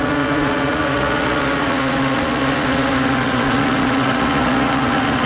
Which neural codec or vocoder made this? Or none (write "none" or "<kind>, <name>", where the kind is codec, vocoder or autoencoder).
vocoder, Vocos